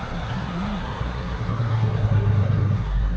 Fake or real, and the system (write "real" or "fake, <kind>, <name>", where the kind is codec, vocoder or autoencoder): fake, codec, SNAC